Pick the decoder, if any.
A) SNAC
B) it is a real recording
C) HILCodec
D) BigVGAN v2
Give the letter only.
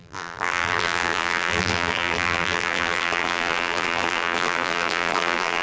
D